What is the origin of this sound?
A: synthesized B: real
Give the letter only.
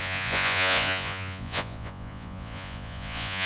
A